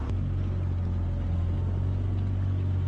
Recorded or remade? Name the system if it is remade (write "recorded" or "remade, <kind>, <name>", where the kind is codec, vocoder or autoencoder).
recorded